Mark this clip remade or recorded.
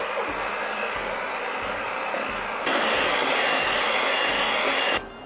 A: recorded